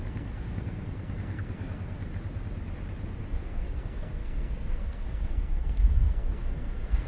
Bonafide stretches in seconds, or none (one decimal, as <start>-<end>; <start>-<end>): 2.1-3.3